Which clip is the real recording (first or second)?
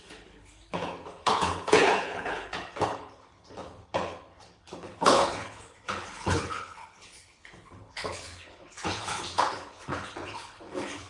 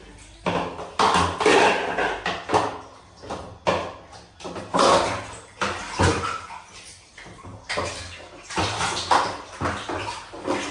second